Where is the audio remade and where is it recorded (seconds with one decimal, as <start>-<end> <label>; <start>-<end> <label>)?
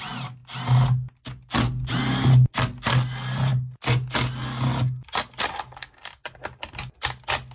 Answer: 0.0-7.5 recorded